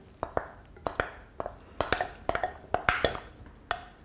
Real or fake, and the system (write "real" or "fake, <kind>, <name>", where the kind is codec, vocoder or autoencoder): real